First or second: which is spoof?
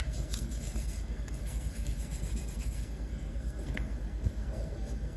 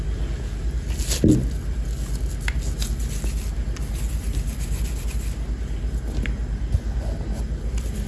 first